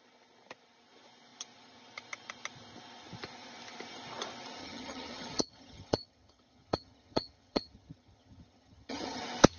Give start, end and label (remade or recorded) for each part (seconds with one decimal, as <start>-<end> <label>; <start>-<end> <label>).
0.0-4.6 recorded; 4.6-9.2 remade; 9.2-9.6 recorded